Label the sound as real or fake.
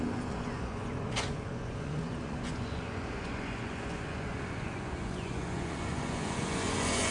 fake